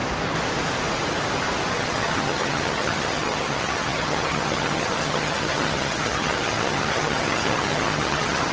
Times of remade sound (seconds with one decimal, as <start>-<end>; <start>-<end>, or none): 1.7-8.5